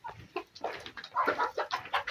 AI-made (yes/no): no